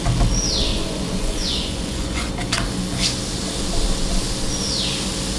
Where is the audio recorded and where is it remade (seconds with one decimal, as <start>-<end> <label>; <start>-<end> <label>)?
0.0-0.7 recorded; 0.7-2.3 remade; 2.3-5.4 recorded